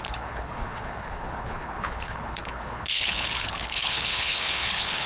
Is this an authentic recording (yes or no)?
no